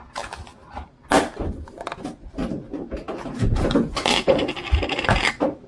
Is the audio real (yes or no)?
yes